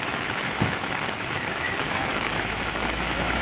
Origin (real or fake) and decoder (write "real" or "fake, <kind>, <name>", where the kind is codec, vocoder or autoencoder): fake, autoencoder, DAC-VAE